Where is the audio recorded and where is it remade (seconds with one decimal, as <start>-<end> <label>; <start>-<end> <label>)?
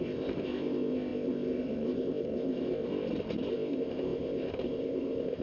0.0-2.9 remade; 2.9-3.5 recorded; 3.5-5.4 remade